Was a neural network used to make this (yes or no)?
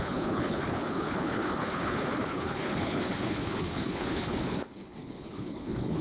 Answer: yes